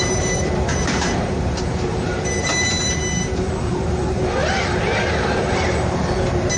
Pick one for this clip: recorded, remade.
remade